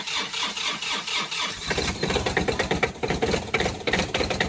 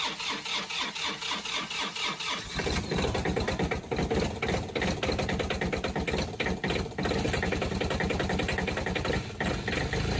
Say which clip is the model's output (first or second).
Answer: first